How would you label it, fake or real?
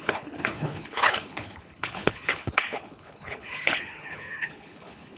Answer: fake